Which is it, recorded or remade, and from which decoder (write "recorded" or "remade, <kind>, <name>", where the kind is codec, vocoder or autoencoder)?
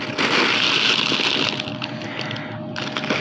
recorded